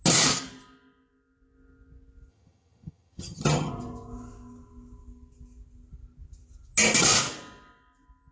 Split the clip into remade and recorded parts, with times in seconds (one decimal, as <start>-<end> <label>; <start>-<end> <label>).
0.0-2.3 recorded; 2.3-3.7 remade; 3.7-8.3 recorded